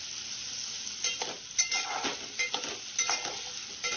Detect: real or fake real